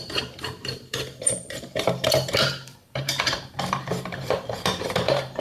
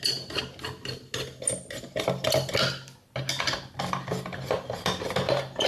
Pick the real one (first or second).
second